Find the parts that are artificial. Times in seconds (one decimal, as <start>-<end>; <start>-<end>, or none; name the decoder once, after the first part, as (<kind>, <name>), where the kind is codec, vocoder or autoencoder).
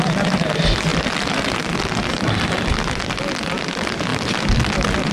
0.9-2.6 (vocoder, BigVGAN v2); 4.1-5.1